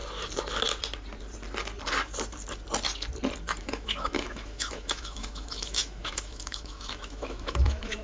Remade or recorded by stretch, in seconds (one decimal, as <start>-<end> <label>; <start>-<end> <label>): 0.0-3.6 recorded; 3.6-8.0 remade